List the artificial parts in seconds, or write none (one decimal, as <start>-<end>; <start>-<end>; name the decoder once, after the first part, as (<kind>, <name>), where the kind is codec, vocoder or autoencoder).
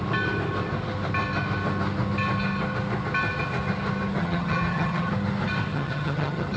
4.2-5.1 (vocoder, HiFi-GAN); 5.7-6.6